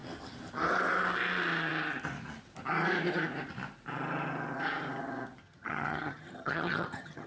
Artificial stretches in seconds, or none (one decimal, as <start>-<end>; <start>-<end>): 5.4-7.3

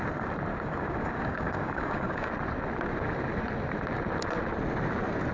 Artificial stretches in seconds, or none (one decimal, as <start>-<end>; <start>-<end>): 0.5-2.3

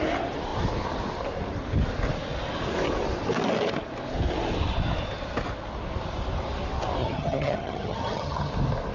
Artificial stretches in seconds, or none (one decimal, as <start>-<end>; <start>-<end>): 7.0-8.5

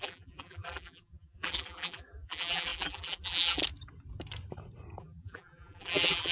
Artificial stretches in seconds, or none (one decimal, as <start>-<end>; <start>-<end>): 0.0-3.6; 5.0-6.3

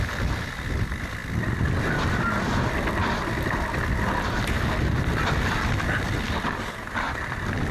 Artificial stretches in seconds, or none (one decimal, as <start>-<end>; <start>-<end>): none

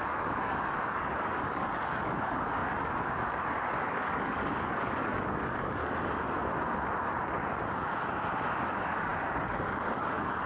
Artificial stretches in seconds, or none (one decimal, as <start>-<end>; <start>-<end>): 0.0-5.8; 8.5-10.5

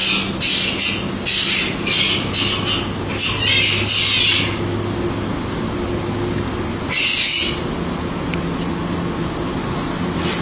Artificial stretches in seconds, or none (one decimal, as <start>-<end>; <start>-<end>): none

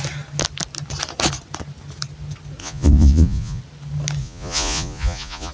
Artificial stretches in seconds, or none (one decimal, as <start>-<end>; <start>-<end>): 2.6-3.6; 4.2-5.5